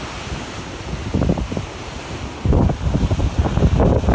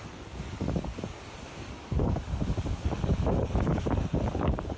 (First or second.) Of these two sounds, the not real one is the second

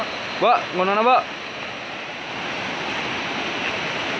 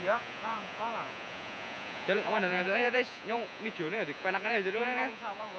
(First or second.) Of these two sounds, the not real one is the second